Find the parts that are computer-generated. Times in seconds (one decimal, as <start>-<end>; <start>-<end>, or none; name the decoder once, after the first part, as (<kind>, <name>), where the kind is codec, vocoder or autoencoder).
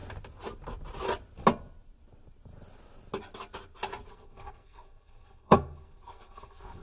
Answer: 4.1-6.8 (codec, SNAC)